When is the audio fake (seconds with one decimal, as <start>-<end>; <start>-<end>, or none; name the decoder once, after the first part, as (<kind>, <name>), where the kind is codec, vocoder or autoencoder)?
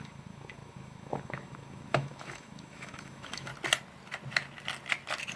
0.0-3.5 (autoencoder, DAC-VAE)